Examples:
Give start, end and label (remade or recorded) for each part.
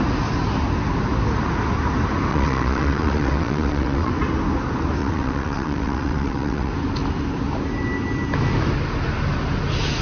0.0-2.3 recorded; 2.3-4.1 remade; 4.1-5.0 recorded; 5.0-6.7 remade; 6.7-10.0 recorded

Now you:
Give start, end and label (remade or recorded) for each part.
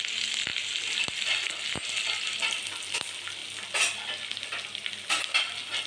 0.0-5.9 recorded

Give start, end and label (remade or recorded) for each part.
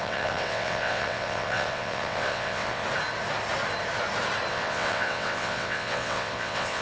0.0-2.8 remade; 2.8-4.5 recorded; 4.5-6.8 remade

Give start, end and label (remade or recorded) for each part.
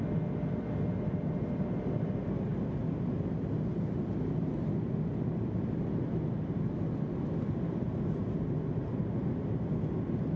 0.0-10.4 recorded